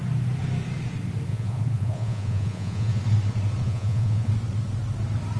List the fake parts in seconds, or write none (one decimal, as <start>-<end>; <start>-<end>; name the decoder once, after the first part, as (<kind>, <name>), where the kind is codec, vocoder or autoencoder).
1.3-3.0 (vocoder, Vocos); 3.6-4.3